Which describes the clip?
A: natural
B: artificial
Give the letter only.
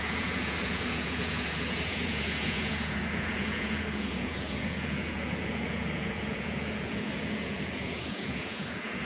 B